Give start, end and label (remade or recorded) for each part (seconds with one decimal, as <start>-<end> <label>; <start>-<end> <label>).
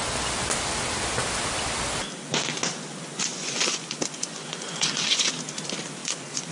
0.0-3.3 recorded; 3.3-5.3 remade; 5.3-6.0 recorded; 6.0-6.5 remade